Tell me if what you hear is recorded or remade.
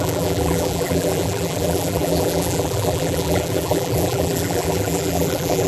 remade